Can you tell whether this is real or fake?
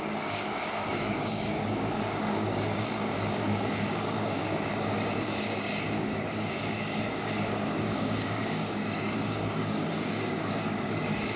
fake